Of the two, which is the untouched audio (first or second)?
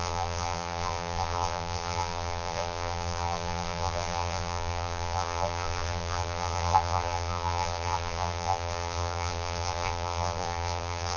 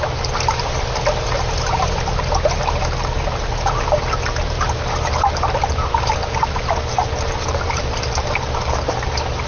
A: second